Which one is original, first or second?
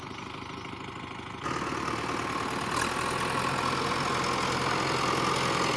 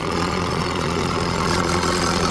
first